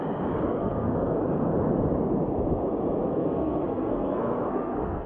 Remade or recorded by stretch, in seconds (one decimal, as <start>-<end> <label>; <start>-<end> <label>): 0.0-0.6 recorded; 0.6-1.2 remade; 1.2-3.0 recorded; 3.0-5.1 remade